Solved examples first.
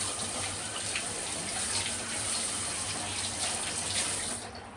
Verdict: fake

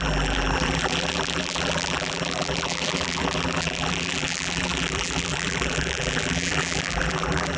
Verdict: fake